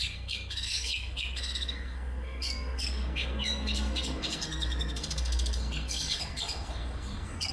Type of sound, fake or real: fake